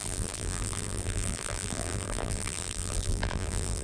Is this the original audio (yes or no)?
no